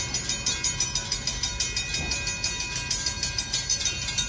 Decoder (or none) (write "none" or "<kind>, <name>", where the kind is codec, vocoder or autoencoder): none